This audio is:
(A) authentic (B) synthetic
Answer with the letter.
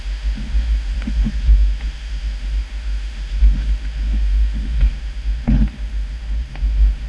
B